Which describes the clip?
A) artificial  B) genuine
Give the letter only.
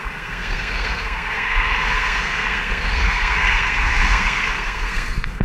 A